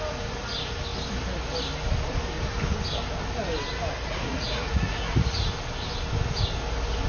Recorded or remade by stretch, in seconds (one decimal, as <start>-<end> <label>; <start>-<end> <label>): 0.0-4.1 recorded; 4.1-5.5 remade; 5.5-7.1 recorded